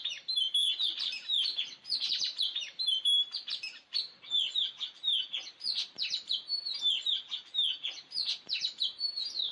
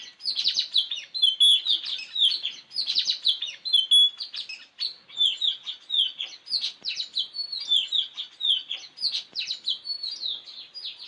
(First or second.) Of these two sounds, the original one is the second